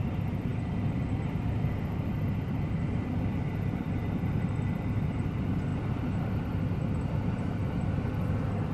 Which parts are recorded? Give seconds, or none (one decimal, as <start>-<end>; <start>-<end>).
0.0-0.5; 5.3-5.7; 6.4-8.7